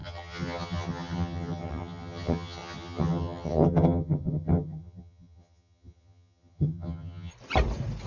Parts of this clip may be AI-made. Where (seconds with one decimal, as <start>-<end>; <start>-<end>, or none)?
0.0-7.3